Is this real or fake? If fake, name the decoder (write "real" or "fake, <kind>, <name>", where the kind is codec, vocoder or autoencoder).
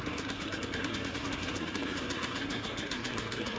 fake, codec, SNAC